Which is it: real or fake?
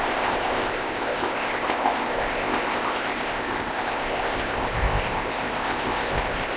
fake